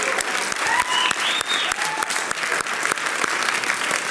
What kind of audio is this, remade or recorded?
recorded